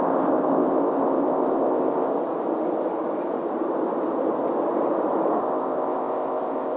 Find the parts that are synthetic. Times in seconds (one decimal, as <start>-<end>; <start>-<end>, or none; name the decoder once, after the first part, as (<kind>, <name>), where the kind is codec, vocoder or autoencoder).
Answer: 0.0-2.1 (codec, ZipCodec); 5.4-6.8